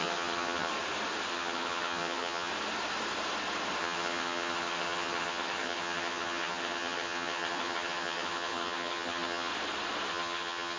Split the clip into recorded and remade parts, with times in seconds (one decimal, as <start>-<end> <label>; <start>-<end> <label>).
0.0-0.7 remade; 0.7-1.3 recorded; 1.3-2.5 remade; 2.5-3.8 recorded; 3.8-9.5 remade; 9.5-10.1 recorded; 10.1-10.8 remade